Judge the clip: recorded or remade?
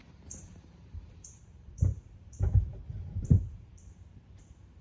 remade